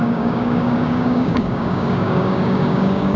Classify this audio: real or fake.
fake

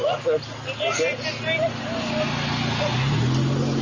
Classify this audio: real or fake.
real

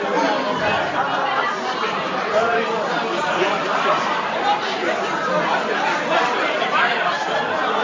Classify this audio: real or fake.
real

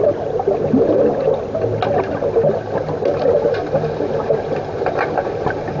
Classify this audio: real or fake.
real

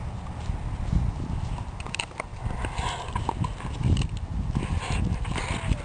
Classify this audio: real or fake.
real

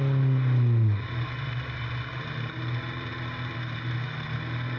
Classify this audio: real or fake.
real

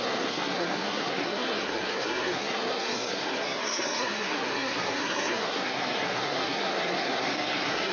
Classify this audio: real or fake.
fake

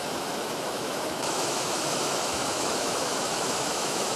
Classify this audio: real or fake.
fake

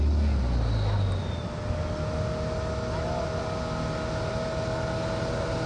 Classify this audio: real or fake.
real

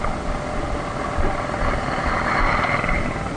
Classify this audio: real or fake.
real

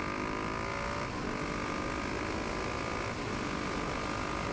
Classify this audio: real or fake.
real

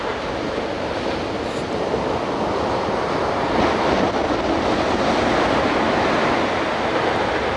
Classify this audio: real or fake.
real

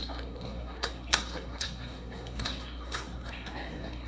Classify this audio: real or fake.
fake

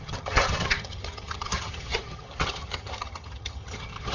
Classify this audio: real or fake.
fake